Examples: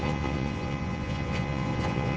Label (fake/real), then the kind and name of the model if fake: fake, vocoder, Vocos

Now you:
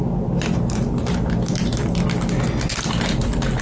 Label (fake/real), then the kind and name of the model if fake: real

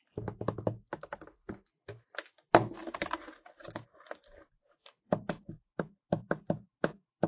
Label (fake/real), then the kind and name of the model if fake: real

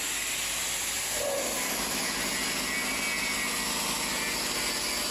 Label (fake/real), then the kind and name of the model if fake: real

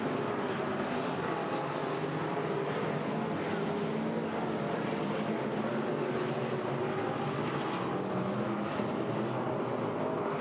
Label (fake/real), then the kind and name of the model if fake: real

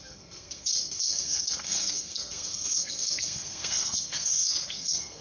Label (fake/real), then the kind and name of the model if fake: fake, codec, SNAC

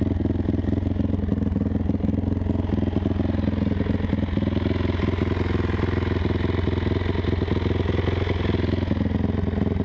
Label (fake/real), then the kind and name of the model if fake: real